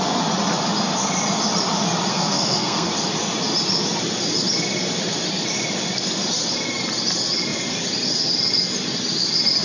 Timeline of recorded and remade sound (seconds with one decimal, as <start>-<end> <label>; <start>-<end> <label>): 0.0-2.1 recorded; 2.1-2.9 remade; 2.9-9.6 recorded